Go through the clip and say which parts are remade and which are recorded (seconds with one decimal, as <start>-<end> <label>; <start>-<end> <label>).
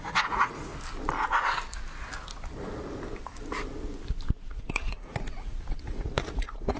0.0-0.7 remade; 0.7-4.5 recorded; 4.5-6.8 remade